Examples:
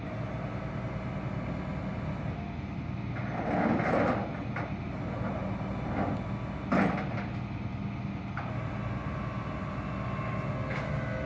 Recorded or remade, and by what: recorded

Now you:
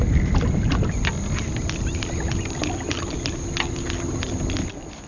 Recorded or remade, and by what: recorded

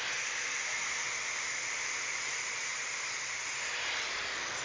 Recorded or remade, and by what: recorded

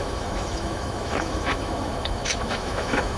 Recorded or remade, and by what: remade, autoencoder, DAC-VAE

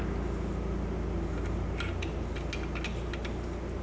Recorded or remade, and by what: recorded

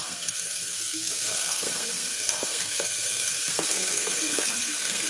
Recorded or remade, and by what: remade, codec, SNAC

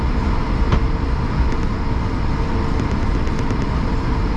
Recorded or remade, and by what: recorded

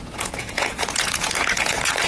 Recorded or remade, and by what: remade, vocoder, Vocos